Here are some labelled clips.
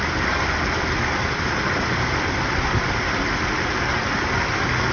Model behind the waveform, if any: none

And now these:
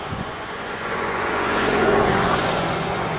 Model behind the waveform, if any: vocoder, Vocos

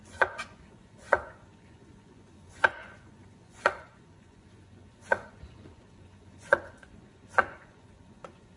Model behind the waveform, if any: vocoder, Vocos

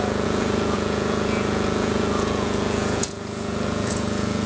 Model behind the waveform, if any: vocoder, Vocos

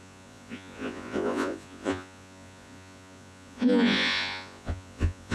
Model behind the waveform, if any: vocoder, Vocos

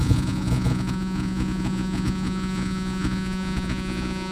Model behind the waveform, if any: vocoder, Vocos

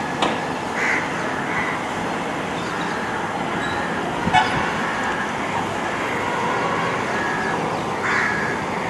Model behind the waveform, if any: none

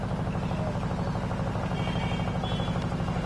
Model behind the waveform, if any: none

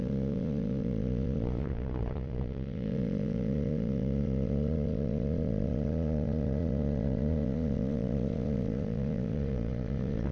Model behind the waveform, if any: vocoder, Vocos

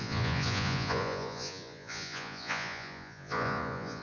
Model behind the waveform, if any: vocoder, Vocos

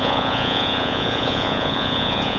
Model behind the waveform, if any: vocoder, Vocos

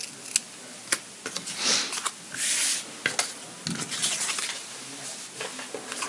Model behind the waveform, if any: none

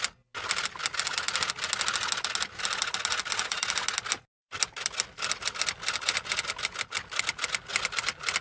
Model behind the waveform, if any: none